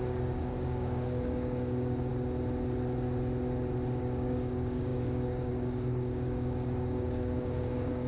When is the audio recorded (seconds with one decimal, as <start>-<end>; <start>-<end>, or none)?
2.1-4.0